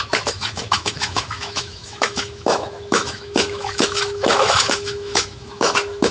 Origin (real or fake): fake